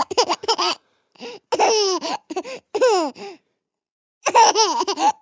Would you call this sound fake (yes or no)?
no